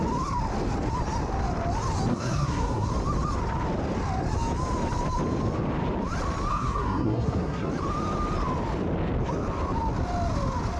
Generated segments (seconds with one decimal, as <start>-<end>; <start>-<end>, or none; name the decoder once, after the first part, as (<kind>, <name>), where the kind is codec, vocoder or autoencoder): 2.1-2.9 (codec, SNAC); 6.5-7.7